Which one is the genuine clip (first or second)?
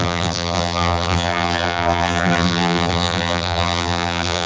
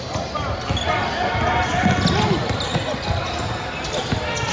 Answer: second